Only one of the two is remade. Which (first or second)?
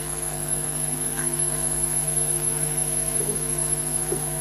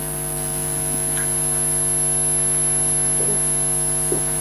first